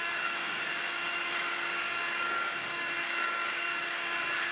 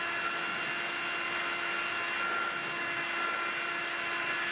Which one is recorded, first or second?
second